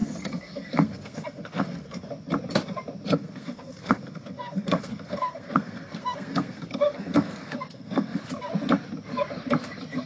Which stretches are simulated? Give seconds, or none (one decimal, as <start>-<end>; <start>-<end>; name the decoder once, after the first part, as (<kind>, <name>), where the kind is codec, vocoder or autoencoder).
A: 0.0-2.1 (codec, SNAC); 3.1-8.2